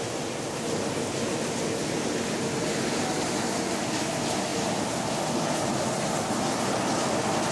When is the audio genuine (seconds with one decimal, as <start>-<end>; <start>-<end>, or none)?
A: 0.0-4.5; 5.4-7.5